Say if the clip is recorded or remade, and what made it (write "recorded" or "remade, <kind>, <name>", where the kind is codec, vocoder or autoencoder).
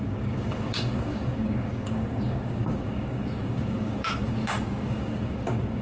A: remade, codec, DAC